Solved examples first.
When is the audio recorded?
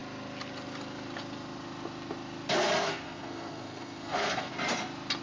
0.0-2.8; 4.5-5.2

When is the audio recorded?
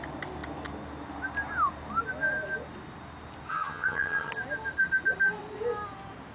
0.0-3.5; 4.3-6.3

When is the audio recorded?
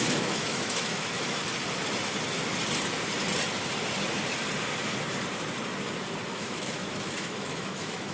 1.4-6.3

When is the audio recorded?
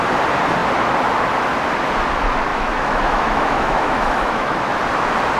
0.0-2.5; 4.8-5.4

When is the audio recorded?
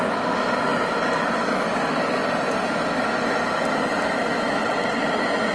0.0-4.6; 5.1-5.5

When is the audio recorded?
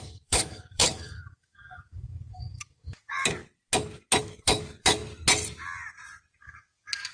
3.4-4.2; 5.0-6.4